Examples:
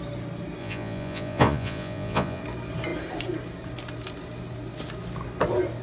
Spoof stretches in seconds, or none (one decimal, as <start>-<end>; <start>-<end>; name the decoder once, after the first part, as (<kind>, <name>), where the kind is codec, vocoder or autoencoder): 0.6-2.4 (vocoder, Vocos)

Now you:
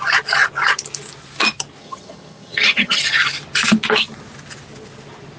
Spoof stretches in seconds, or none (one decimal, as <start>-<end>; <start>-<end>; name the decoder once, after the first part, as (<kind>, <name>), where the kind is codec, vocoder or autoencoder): 1.8-3.0 (vocoder, HiFi-GAN)

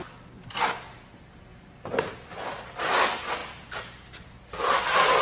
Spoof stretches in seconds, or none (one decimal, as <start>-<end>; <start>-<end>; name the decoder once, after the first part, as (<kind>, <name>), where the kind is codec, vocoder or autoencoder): 1.5-2.9 (vocoder, BigVGAN v2)

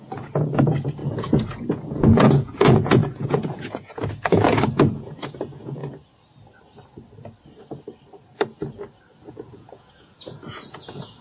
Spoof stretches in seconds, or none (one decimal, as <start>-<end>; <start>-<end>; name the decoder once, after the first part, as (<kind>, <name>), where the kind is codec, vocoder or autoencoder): 0.0-5.8 (vocoder, Vocos); 9.3-11.2

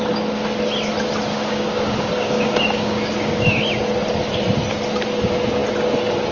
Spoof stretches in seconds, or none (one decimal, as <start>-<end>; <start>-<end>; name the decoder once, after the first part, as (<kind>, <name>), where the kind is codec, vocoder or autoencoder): 1.3-3.6 (codec, DAC)